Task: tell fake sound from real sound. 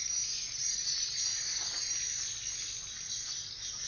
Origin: real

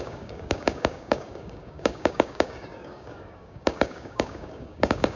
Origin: fake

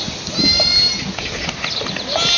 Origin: real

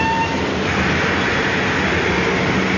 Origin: real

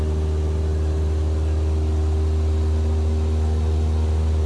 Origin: real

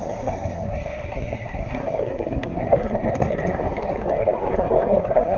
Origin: fake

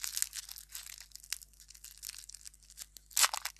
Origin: real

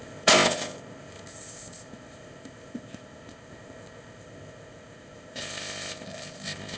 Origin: fake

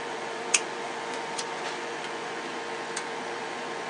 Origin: fake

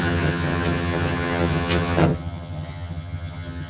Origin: fake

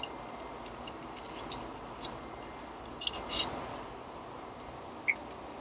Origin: real